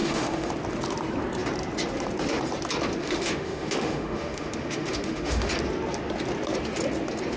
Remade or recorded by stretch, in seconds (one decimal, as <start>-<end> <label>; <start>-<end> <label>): 0.0-0.5 remade; 0.5-3.0 recorded; 3.0-5.5 remade; 5.5-7.4 recorded